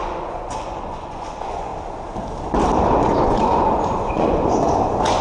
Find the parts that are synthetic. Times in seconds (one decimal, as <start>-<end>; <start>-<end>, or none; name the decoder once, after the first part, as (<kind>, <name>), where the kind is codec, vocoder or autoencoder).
0.0-1.7 (vocoder, Vocos); 3.0-5.2